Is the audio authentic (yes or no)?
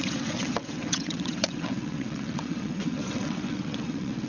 no